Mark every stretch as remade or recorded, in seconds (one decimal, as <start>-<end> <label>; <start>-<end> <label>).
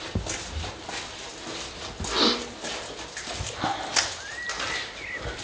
0.0-5.4 recorded